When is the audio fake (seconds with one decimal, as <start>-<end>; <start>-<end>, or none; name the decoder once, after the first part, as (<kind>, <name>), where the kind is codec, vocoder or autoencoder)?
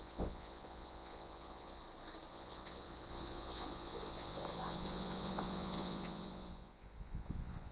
0.0-1.8 (vocoder, Vocos); 2.3-7.7